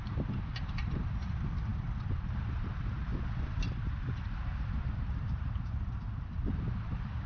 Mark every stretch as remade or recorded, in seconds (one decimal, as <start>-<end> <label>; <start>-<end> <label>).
0.0-7.3 remade